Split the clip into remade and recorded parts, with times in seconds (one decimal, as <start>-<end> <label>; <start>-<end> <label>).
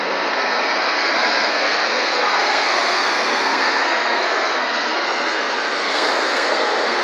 0.0-7.0 remade